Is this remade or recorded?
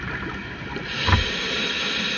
recorded